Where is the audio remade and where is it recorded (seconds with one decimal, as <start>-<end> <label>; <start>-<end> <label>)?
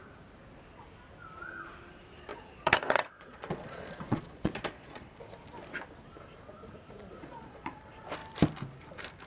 0.0-2.3 recorded; 2.3-5.2 remade; 5.2-7.1 recorded; 7.1-7.8 remade; 7.8-9.3 recorded